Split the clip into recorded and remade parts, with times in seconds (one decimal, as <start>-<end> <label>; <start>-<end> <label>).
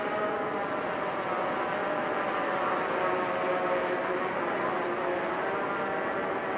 0.0-6.6 recorded